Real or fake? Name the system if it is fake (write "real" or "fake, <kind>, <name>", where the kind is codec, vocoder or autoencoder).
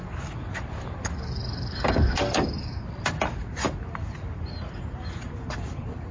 real